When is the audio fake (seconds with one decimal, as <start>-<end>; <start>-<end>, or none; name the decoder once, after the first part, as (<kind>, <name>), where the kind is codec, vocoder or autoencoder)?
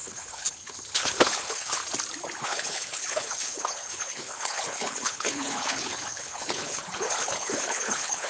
0.0-1.8 (codec, HILCodec); 2.4-8.3